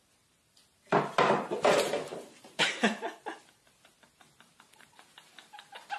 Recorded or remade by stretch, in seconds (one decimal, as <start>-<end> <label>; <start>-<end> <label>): 0.0-2.1 recorded; 2.1-3.4 remade; 3.4-6.0 recorded